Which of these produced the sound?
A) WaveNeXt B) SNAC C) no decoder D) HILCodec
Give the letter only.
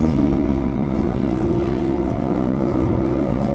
A